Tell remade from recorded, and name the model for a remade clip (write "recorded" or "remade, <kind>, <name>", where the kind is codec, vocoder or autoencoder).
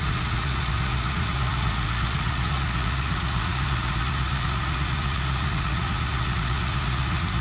remade, vocoder, Vocos